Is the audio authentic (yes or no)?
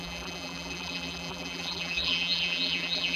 no